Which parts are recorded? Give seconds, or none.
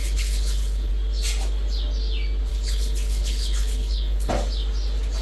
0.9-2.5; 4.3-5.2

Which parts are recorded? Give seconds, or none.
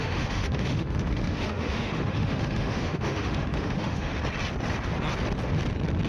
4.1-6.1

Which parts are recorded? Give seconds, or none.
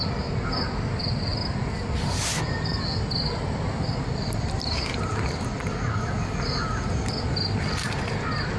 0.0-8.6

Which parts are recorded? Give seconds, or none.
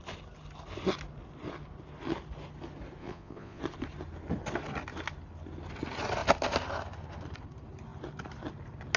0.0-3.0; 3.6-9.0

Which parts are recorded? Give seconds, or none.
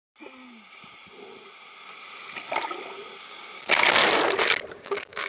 0.0-3.2; 4.0-4.7